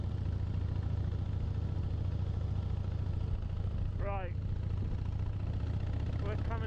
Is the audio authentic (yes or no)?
yes